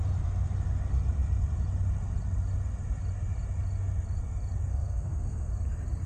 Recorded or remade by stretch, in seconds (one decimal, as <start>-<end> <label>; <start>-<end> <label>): 0.0-4.7 recorded; 4.7-5.5 remade; 5.5-6.1 recorded